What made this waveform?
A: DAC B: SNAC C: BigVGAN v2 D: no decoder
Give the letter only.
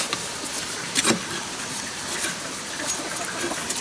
D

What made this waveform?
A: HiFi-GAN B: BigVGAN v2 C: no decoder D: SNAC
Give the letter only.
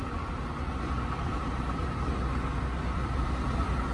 C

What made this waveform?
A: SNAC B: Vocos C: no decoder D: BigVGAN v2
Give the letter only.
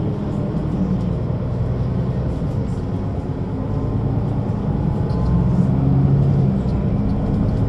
C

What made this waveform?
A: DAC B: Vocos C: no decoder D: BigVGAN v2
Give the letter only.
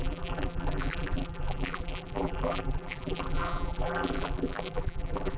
D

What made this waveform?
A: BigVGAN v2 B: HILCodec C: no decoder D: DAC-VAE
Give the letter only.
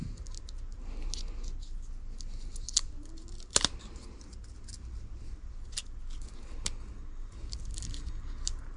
C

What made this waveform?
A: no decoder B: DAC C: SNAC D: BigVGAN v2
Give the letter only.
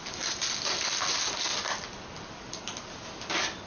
A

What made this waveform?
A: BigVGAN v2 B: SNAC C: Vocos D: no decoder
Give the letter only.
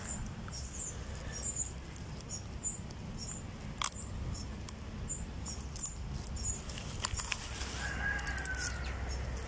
D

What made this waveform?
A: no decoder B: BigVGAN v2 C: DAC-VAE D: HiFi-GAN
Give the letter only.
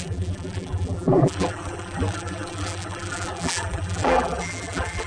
B